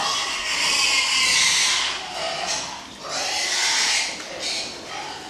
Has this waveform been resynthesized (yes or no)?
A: no